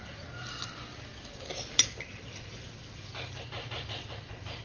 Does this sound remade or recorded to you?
recorded